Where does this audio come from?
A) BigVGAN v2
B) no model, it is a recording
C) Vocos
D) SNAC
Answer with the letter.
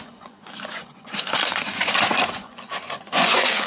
C